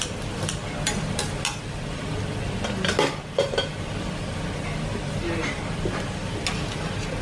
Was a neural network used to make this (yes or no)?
no